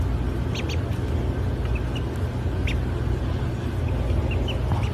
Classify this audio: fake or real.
real